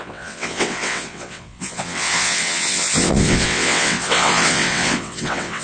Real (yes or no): no